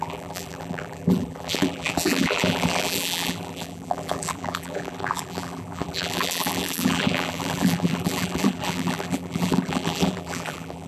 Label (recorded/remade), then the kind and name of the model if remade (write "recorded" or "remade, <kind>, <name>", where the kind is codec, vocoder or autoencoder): remade, vocoder, BigVGAN v2